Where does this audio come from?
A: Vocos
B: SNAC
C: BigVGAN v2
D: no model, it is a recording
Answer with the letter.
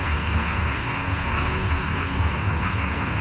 B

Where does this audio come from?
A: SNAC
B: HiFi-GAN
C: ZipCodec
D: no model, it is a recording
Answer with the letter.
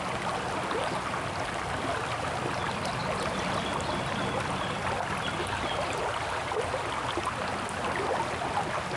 D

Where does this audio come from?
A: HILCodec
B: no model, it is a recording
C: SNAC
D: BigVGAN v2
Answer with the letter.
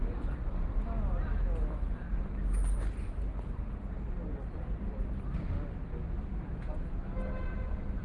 B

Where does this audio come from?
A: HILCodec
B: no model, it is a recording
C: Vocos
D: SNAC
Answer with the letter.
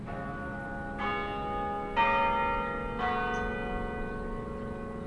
B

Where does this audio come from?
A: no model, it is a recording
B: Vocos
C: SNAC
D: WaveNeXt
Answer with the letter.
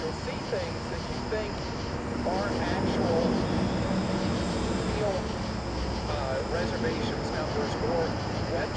A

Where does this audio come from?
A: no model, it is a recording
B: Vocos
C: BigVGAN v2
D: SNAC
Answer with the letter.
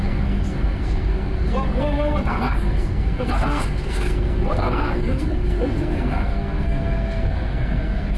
D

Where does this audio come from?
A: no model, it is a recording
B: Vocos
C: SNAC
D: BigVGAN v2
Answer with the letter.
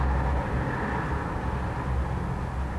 A